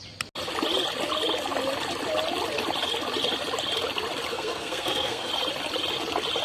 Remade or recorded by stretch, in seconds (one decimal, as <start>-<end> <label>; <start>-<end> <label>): 0.0-4.3 recorded; 4.3-5.3 remade; 5.3-6.4 recorded